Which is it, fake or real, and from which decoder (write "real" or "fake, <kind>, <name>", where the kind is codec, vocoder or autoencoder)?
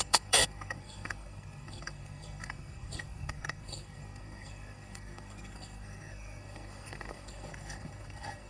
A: fake, codec, SNAC